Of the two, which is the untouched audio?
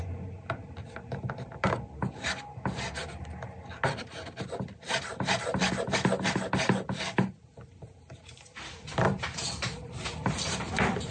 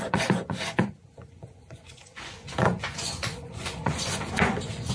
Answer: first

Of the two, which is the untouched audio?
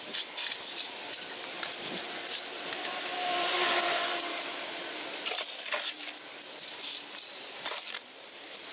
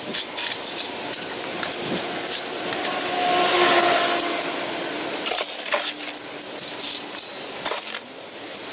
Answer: second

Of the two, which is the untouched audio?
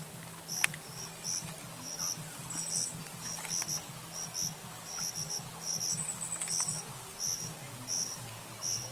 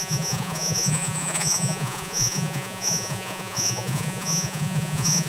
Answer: first